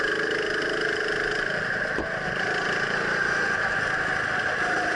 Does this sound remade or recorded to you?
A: recorded